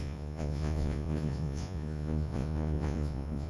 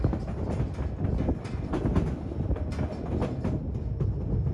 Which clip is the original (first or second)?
second